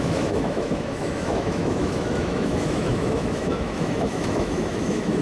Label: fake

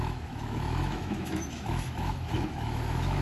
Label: fake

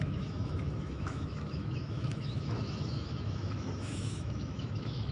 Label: fake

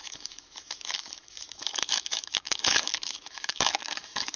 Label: fake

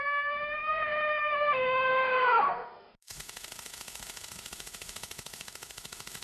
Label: fake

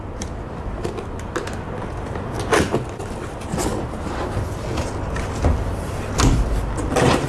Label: real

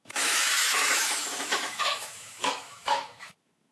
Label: fake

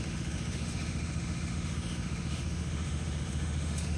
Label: fake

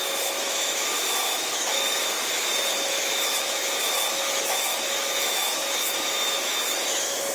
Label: fake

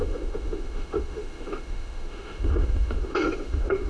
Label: fake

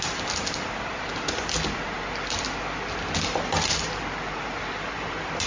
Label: real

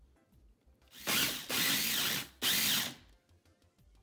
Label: real